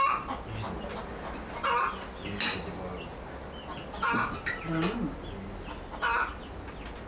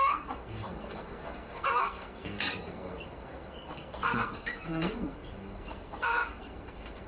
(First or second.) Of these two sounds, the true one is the first